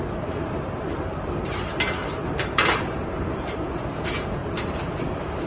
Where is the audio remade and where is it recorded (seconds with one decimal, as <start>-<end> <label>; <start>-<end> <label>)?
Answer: 0.0-1.7 remade; 1.7-2.7 recorded; 2.7-4.4 remade; 4.4-5.1 recorded; 5.1-5.5 remade